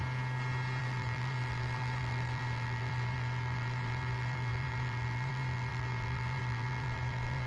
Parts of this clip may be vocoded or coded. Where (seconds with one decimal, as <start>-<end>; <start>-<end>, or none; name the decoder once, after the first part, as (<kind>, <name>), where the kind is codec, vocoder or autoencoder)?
0.8-7.5 (vocoder, BigVGAN v2)